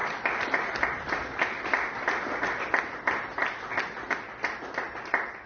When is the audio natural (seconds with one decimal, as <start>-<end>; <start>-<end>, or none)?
0.0-5.5

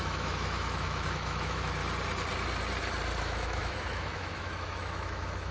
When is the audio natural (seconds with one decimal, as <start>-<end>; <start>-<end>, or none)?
1.8-3.2

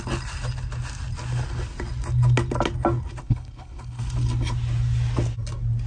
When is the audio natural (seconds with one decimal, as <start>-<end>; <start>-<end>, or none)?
0.0-3.2; 4.0-5.9